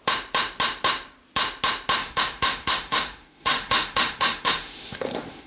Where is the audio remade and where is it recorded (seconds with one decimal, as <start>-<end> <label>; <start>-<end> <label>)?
0.0-2.0 recorded; 2.0-5.5 remade